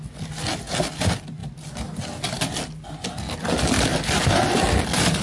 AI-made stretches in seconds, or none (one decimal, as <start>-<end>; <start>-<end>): none

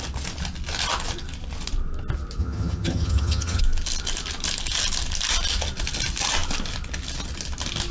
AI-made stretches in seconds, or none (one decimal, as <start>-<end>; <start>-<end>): 2.4-3.6

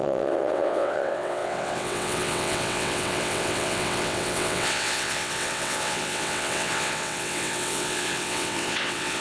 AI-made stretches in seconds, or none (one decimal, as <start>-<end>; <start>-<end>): 0.0-9.2

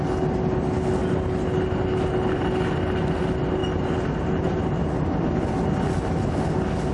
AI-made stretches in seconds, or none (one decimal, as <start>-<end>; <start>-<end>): none

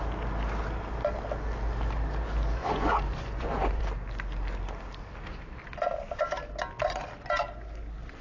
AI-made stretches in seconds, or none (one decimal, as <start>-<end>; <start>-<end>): 2.6-3.8

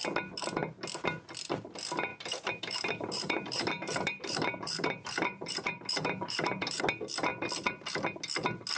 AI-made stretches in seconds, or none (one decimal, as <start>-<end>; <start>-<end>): 2.1-6.8

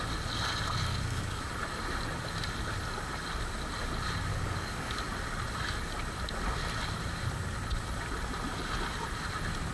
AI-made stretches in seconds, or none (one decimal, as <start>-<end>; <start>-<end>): 0.9-1.5; 4.3-5.0

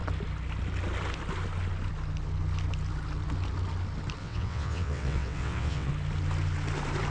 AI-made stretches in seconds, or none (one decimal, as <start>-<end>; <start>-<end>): 4.2-5.9